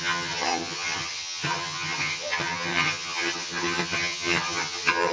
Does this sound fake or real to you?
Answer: fake